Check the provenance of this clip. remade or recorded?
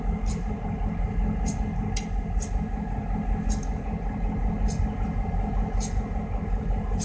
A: recorded